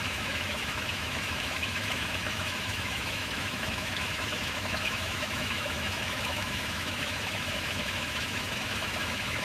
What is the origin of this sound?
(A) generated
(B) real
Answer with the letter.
A